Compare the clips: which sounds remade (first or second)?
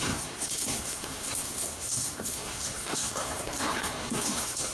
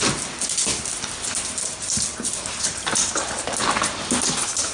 first